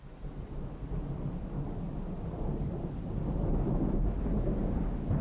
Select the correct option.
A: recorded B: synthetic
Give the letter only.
A